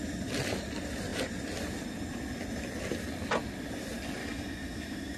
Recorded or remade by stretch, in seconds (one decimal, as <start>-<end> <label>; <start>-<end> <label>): 0.0-4.2 recorded; 4.2-5.2 remade